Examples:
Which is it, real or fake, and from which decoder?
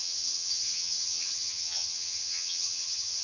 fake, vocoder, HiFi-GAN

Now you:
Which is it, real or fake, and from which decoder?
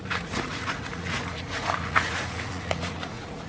fake, vocoder, Vocos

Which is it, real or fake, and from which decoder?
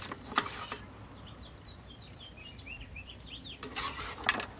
real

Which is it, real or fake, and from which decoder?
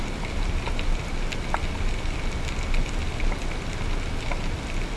real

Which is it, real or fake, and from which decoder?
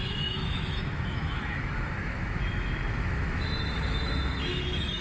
fake, autoencoder, DAC-VAE